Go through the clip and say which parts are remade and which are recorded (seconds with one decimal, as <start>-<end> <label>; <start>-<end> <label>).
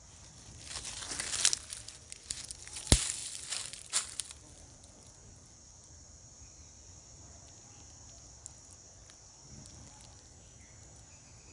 0.0-3.2 recorded; 3.2-7.4 remade; 7.4-9.0 recorded; 9.0-10.3 remade; 10.3-11.5 recorded